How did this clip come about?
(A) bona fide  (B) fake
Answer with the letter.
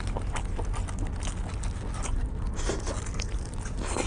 A